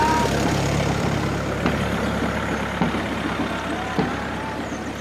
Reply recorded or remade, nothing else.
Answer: remade